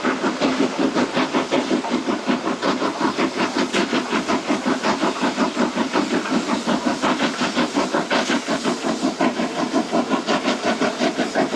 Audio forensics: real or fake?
real